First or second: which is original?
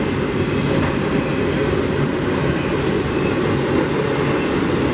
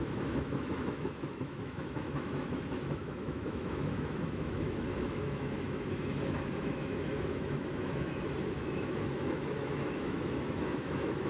first